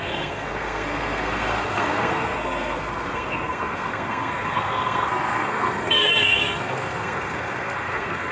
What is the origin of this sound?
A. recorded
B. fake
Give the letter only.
B